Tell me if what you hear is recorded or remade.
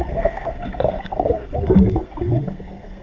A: remade